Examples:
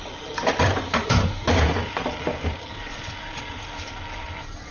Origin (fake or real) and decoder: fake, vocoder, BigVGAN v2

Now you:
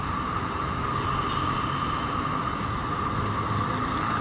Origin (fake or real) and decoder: real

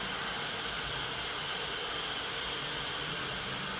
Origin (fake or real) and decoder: real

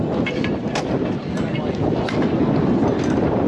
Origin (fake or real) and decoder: real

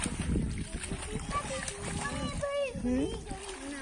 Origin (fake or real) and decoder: real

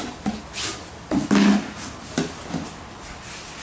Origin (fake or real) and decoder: real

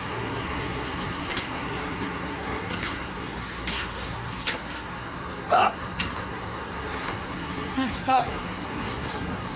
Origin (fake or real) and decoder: fake, codec, SNAC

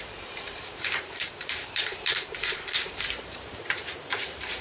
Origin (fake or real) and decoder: fake, vocoder, BigVGAN v2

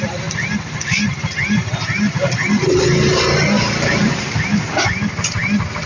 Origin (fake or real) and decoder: real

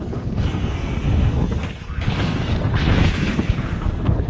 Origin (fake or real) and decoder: fake, codec, SNAC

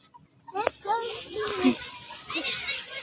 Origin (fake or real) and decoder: real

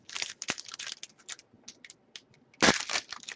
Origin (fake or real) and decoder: real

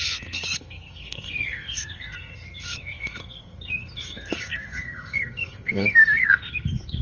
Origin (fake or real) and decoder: fake, codec, SNAC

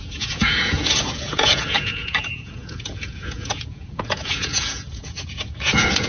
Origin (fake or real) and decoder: fake, vocoder, Vocos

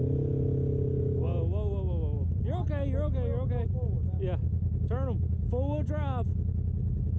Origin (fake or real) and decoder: real